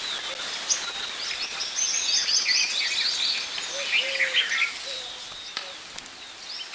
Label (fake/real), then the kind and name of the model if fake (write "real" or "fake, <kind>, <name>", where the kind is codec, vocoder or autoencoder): real